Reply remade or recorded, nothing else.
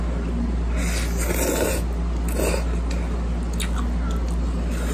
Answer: recorded